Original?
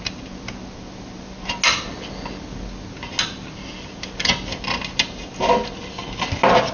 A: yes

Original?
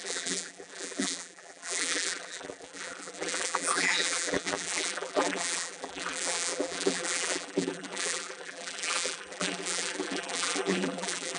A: no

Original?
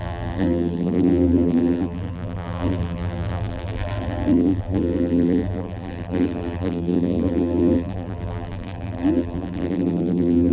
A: no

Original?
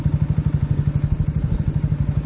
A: yes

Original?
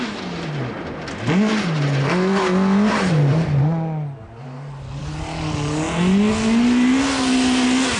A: yes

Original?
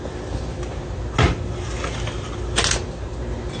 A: yes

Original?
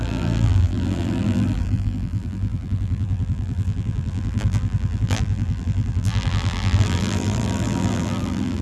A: no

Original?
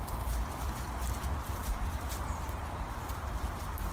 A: no